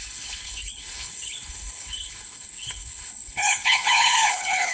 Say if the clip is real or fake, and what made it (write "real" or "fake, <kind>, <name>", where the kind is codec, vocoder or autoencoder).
fake, codec, HILCodec